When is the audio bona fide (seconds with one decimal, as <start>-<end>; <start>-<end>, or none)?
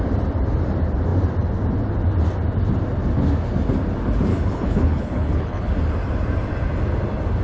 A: 0.0-4.3; 5.7-7.4